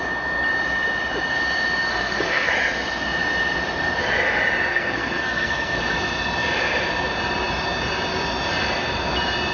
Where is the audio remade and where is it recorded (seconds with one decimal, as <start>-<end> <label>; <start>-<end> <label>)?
0.0-1.9 recorded; 1.9-2.5 remade; 2.5-4.7 recorded; 4.7-5.8 remade; 5.8-9.5 recorded